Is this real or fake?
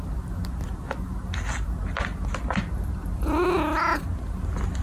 real